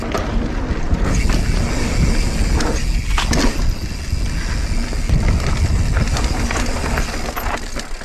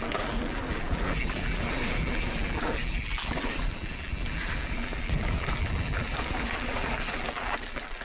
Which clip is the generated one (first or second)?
second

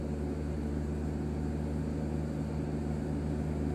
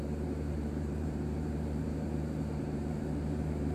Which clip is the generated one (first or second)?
second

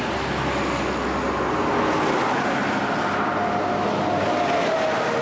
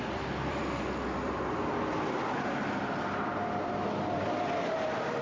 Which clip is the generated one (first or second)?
second